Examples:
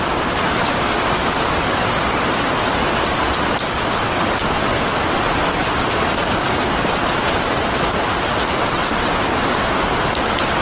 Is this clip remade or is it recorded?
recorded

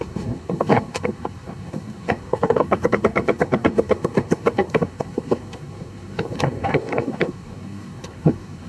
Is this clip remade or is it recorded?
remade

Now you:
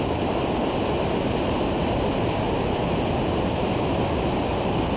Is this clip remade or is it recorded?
recorded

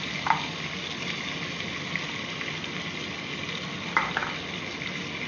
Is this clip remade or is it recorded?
recorded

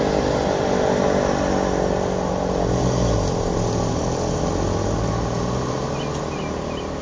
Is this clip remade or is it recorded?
recorded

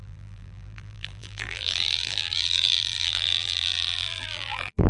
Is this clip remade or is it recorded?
remade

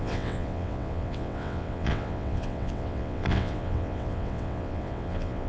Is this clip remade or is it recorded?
remade